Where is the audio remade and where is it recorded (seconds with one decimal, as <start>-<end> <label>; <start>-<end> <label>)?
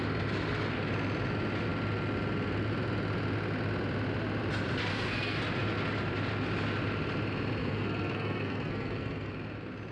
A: 0.0-4.9 recorded; 4.9-5.4 remade; 5.4-7.6 recorded; 7.6-9.3 remade; 9.3-9.9 recorded